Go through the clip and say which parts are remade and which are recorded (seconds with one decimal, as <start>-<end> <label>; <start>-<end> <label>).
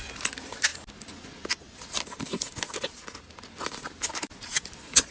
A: 0.0-5.1 recorded